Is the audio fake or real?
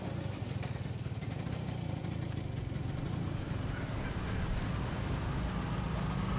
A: real